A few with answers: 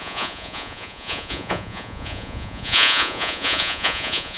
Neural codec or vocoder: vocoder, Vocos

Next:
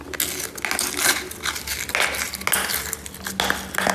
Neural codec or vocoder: none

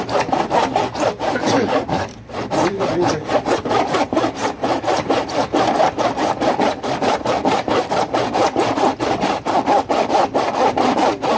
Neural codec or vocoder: vocoder, BigVGAN v2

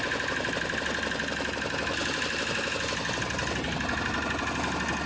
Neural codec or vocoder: none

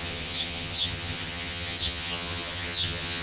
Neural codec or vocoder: vocoder, HiFi-GAN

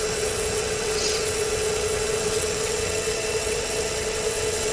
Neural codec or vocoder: vocoder, WaveNeXt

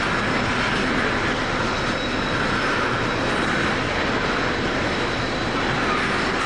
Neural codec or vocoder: none